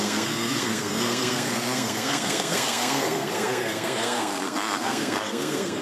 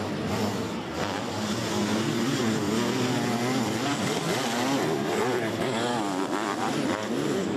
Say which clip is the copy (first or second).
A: first